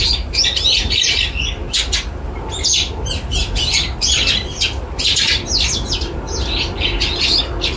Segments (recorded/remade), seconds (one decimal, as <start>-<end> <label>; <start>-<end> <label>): 0.0-7.8 recorded